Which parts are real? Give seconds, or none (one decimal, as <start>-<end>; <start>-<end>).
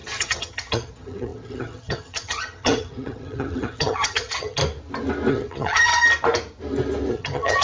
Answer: 4.6-5.3; 5.9-7.1